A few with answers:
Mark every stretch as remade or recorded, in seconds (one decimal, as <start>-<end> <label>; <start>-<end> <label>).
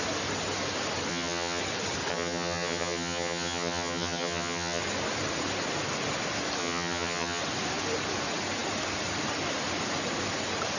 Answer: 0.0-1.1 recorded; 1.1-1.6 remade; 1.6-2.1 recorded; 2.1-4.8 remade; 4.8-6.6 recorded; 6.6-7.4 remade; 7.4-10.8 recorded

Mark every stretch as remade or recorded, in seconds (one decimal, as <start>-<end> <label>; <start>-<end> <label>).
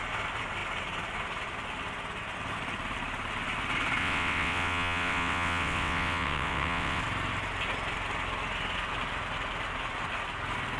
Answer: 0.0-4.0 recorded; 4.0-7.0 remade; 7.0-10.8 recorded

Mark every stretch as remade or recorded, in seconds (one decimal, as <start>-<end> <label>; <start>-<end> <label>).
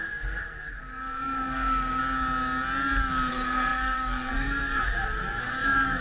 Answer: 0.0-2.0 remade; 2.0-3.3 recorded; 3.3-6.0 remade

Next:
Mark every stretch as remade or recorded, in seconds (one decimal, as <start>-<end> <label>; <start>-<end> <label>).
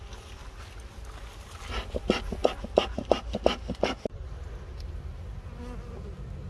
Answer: 0.0-6.5 recorded